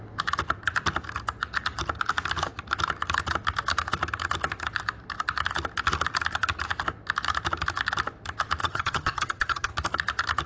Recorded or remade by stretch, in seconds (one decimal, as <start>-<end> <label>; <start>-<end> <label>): 0.0-8.6 recorded; 8.6-9.7 remade; 9.7-10.5 recorded